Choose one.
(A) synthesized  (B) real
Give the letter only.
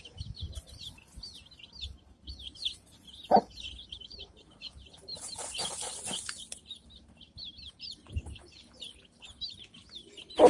B